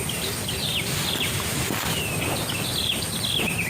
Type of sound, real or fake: real